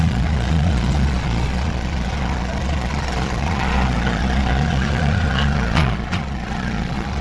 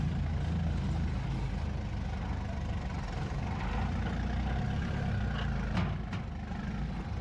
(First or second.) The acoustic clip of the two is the second